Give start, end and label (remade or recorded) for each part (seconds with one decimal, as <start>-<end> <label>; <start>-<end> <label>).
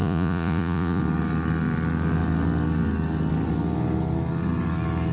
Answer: 0.0-1.0 remade; 1.0-5.1 recorded